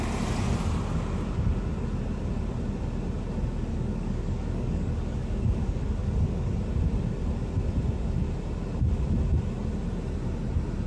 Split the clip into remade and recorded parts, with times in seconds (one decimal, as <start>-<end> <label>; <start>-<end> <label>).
0.0-3.7 recorded; 3.7-6.6 remade; 6.6-10.9 recorded